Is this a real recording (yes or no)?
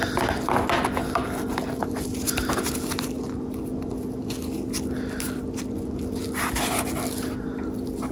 yes